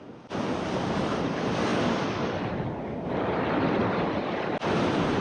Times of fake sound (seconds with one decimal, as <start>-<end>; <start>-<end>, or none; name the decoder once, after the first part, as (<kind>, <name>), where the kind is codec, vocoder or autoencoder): 0.0-5.2 (vocoder, BigVGAN v2)